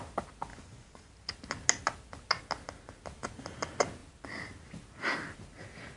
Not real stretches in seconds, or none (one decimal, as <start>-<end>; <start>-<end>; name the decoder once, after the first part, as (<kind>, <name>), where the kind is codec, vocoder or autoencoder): 0.5-1.1 (vocoder, Vocos)